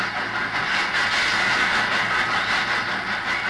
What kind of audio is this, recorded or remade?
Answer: recorded